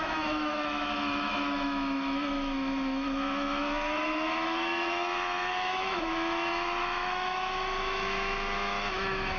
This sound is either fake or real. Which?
fake